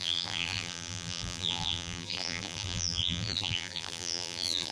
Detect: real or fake fake